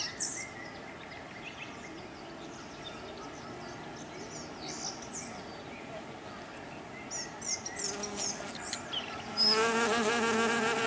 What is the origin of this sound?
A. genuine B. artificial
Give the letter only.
A